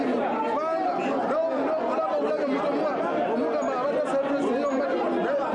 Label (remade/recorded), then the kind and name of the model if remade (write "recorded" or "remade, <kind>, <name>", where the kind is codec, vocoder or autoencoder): recorded